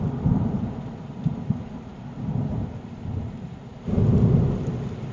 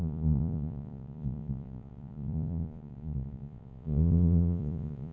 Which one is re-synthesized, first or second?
second